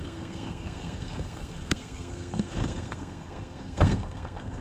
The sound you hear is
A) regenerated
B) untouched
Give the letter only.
A